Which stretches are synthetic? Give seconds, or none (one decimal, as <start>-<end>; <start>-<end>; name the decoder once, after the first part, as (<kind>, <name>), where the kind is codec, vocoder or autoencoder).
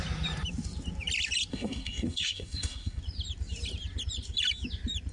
1.5-3.0 (codec, SNAC)